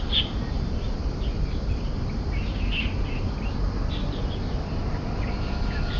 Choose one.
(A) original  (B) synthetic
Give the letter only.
A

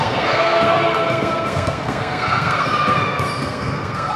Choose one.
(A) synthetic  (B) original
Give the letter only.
A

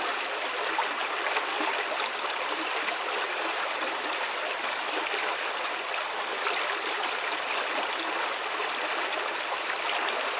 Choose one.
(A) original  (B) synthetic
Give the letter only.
A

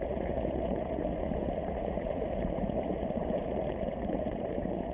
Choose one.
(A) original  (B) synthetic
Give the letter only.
B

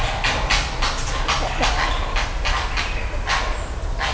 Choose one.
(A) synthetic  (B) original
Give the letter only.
B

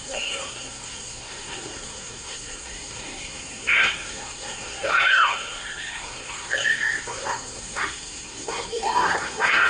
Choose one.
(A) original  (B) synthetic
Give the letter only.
B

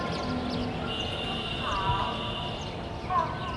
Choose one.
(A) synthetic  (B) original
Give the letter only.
B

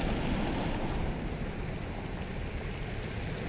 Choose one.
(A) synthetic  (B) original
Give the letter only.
B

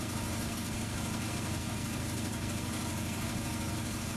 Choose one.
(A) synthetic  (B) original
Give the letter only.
A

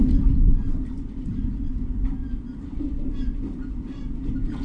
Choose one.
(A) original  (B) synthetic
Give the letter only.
A